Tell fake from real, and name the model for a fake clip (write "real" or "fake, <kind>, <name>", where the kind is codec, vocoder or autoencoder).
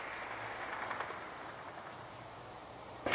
real